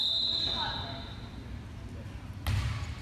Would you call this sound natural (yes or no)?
yes